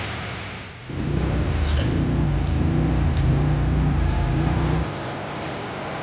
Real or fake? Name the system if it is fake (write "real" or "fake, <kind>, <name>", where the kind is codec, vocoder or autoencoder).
fake, vocoder, BigVGAN v2